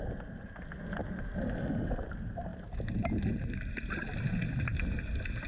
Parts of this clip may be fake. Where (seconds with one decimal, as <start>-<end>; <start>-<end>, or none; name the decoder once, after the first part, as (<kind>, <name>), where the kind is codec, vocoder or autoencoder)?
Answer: none